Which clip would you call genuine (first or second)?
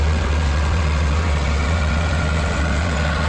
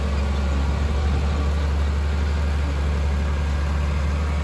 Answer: second